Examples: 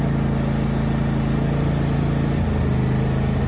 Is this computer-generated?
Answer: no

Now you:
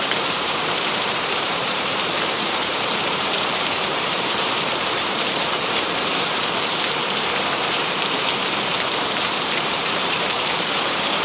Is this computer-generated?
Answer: yes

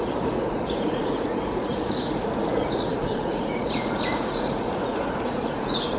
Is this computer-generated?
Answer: yes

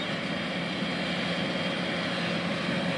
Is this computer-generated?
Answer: no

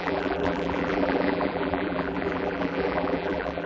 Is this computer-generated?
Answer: yes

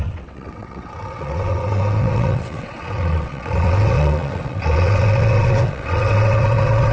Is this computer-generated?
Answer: yes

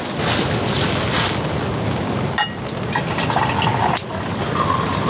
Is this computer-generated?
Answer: no